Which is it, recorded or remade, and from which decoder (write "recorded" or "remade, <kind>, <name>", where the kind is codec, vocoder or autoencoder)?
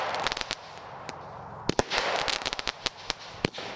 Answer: recorded